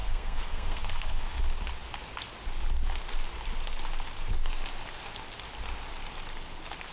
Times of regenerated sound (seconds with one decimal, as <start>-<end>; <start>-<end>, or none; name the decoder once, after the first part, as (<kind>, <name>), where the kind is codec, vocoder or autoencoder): 0.0-1.4 (codec, SNAC)